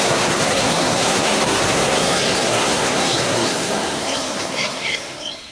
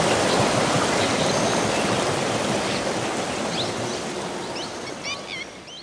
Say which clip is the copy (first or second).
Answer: first